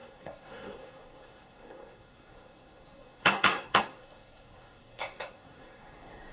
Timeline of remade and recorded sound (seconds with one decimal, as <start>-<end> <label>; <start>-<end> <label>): 0.0-6.3 remade